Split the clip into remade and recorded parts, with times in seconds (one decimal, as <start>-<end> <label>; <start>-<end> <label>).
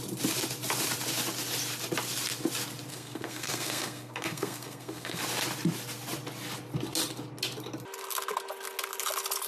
0.0-2.9 recorded; 2.9-5.2 remade; 5.2-9.5 recorded